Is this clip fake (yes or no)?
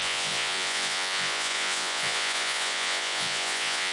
yes